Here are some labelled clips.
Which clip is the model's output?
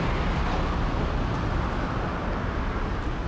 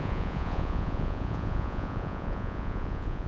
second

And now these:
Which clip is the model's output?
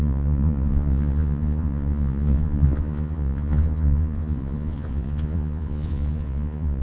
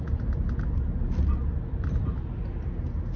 first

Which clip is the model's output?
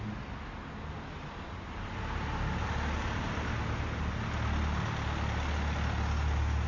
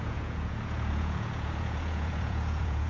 second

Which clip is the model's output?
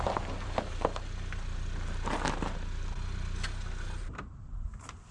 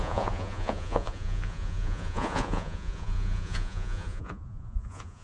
second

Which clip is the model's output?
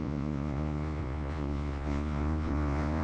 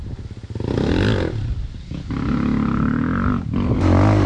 first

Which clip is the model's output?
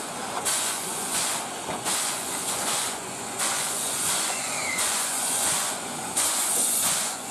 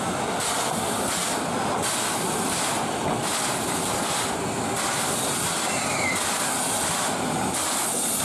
first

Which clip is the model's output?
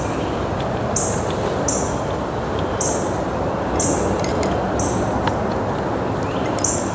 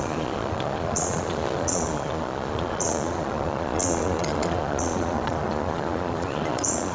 second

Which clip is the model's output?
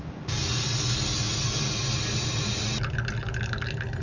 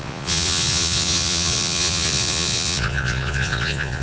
second